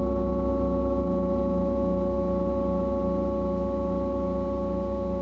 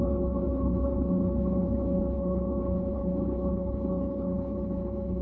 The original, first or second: first